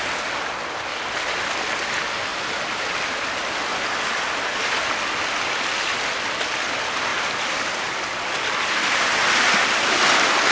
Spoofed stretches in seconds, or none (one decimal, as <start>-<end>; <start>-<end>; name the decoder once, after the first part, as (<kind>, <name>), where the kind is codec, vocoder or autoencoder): none